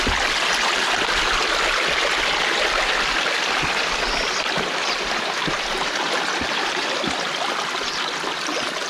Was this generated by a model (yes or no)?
no